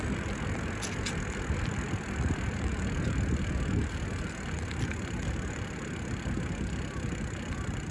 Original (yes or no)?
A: yes